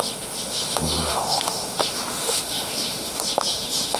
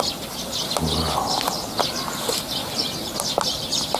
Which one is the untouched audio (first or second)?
second